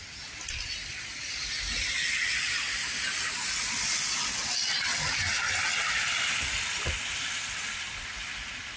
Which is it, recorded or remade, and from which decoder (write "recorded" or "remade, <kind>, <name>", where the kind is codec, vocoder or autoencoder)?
recorded